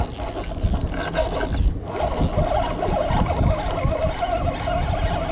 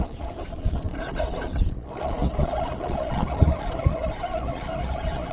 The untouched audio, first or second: first